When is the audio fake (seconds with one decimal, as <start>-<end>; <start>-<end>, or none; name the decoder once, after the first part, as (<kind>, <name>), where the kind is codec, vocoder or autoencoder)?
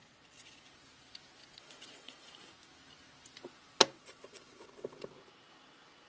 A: 0.0-0.6 (vocoder, WaveNeXt); 1.4-2.1; 4.0-5.0